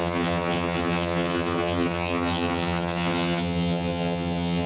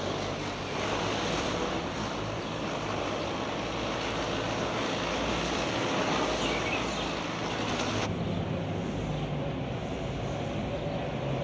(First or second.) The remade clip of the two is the first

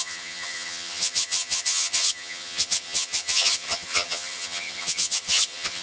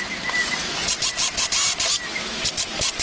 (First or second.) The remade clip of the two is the first